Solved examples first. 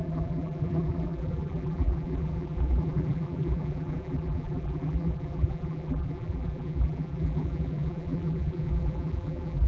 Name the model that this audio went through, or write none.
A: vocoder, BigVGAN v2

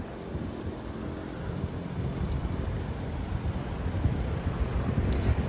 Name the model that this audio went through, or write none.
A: vocoder, BigVGAN v2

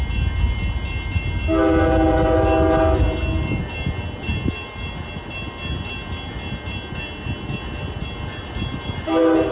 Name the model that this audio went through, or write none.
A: none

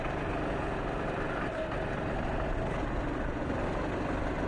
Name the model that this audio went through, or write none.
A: none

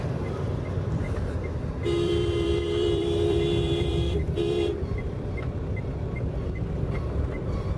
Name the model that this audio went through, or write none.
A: vocoder, BigVGAN v2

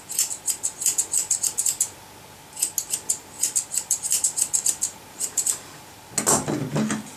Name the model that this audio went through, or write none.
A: none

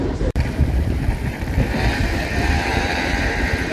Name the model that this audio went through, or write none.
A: vocoder, BigVGAN v2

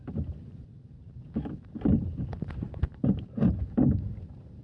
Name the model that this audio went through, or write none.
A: vocoder, BigVGAN v2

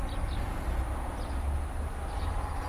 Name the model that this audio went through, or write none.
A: none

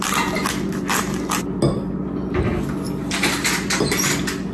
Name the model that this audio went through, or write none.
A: none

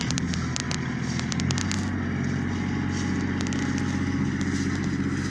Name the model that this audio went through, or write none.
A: none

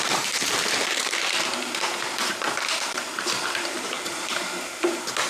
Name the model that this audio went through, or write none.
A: vocoder, BigVGAN v2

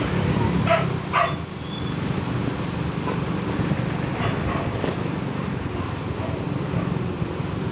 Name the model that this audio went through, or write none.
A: none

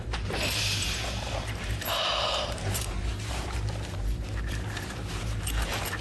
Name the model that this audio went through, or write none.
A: vocoder, BigVGAN v2